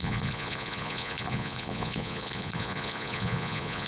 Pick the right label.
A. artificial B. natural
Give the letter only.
A